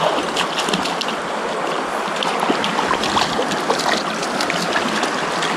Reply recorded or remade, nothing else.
recorded